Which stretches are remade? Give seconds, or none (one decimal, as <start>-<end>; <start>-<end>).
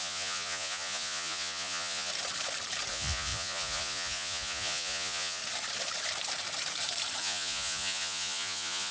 0.0-2.1; 2.9-5.4; 7.2-8.9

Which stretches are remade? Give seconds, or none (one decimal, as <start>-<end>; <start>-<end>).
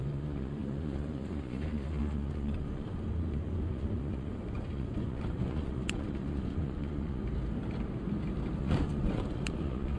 0.0-7.2; 8.6-10.0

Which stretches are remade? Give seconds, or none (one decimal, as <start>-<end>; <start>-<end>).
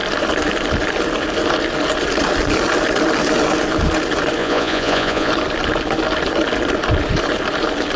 4.4-5.3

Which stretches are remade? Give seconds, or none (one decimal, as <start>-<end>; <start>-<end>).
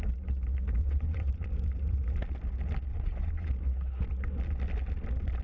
0.8-1.5; 2.9-3.5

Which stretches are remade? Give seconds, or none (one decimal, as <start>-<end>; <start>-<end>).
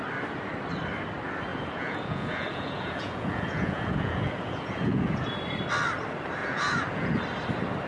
1.5-5.4; 6.4-7.2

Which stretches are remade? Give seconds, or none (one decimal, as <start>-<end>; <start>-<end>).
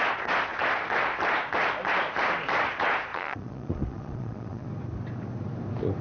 3.1-4.7